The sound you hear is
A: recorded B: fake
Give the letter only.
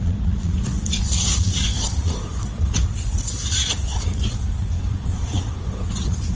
B